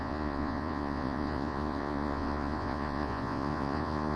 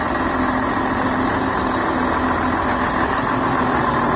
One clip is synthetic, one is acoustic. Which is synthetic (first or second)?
first